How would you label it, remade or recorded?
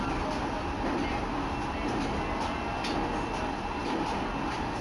recorded